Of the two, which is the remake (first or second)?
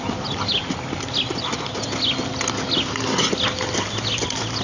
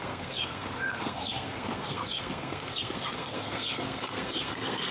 second